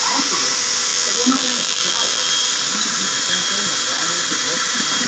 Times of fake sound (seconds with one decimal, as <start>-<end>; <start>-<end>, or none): 0.9-2.3